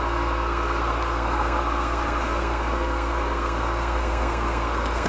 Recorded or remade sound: remade